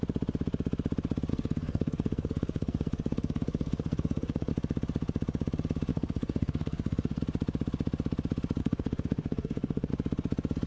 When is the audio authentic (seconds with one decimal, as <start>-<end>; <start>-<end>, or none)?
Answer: 0.0-1.3; 4.5-5.9; 7.2-8.6; 9.9-10.7